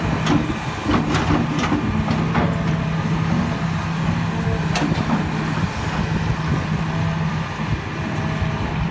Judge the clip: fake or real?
real